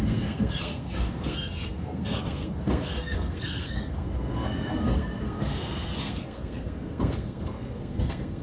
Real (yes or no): no